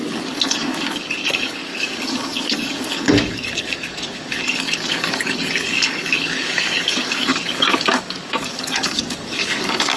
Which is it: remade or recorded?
remade